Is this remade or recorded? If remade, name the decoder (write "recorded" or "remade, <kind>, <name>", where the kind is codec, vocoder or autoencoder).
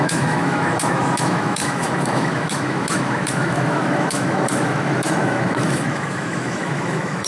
remade, autoencoder, DAC-VAE